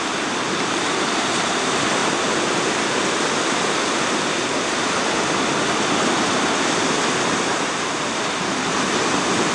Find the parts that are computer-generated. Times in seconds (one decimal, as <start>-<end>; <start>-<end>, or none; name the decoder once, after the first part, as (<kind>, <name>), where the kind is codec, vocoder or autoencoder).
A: 0.0-2.0 (vocoder, BigVGAN v2); 7.3-9.5

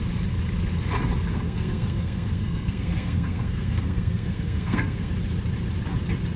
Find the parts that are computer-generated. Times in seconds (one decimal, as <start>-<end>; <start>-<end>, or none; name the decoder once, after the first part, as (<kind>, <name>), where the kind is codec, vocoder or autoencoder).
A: 1.3-5.1 (codec, SNAC)

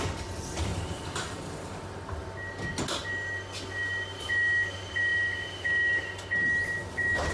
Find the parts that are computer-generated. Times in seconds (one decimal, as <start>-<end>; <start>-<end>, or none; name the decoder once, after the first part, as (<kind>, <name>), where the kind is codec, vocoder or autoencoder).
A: 0.7-2.1 (vocoder, BigVGAN v2)

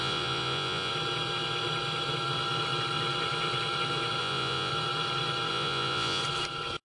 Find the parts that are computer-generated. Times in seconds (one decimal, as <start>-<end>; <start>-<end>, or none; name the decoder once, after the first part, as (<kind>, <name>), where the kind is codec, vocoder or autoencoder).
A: 0.0-0.9 (vocoder, Vocos); 4.2-4.7; 5.5-6.2

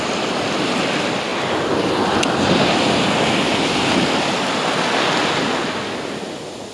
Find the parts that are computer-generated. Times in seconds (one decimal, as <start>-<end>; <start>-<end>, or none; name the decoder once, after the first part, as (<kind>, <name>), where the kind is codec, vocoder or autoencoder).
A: none

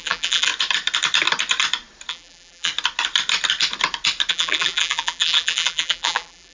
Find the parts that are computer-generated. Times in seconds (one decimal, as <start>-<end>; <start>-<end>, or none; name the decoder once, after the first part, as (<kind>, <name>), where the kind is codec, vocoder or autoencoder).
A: 0.0-0.5 (vocoder, BigVGAN v2); 2.1-2.7; 4.3-6.5

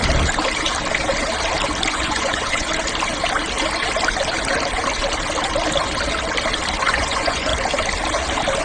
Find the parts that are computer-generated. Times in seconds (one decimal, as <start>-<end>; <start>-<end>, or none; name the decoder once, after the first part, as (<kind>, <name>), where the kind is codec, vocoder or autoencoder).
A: 1.9-2.7 (vocoder, Vocos); 6.9-7.5

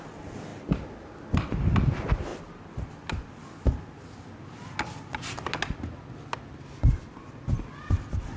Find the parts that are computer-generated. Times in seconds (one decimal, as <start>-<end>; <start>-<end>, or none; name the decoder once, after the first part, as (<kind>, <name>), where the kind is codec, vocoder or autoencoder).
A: none